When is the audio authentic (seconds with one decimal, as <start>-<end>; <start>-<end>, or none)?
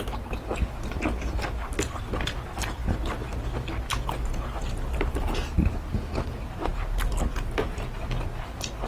0.0-8.9